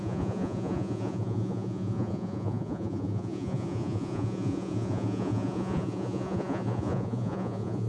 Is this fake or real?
fake